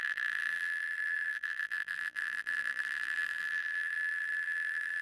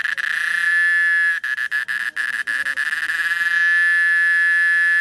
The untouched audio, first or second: second